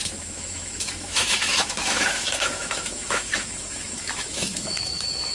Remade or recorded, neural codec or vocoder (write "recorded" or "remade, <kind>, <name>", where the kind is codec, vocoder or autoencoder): remade, autoencoder, DAC-VAE